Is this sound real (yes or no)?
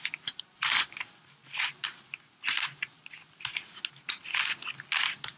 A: yes